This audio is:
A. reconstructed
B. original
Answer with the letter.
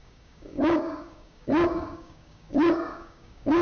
A